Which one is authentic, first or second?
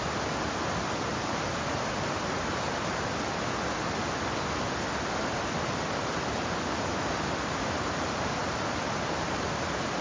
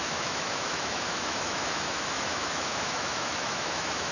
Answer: first